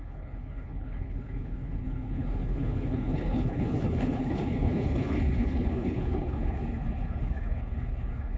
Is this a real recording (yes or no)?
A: no